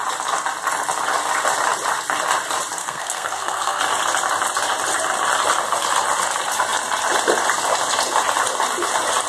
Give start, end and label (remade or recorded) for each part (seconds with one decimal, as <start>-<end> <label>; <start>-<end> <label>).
0.0-2.8 recorded; 2.8-3.8 remade; 3.8-9.3 recorded